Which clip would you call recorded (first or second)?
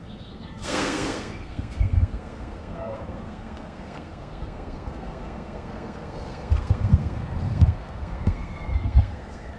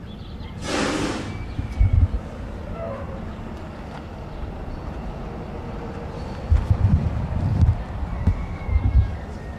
second